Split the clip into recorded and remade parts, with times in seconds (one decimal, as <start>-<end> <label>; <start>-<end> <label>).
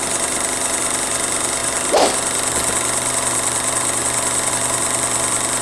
0.0-5.6 recorded